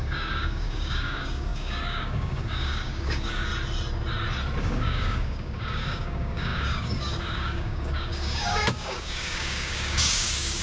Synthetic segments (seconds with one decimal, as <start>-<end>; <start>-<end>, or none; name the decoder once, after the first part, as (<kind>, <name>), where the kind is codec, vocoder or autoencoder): 0.0-3.5 (codec, DAC); 4.6-10.6